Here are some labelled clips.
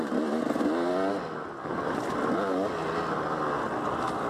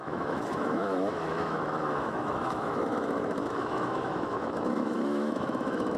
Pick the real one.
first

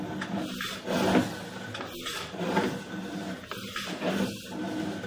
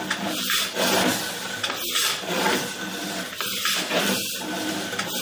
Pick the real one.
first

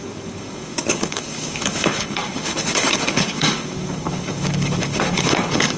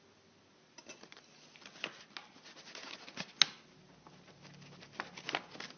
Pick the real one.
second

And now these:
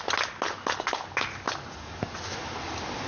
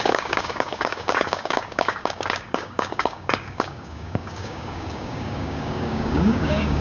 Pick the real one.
first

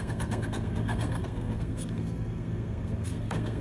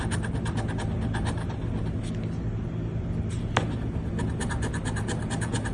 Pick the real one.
second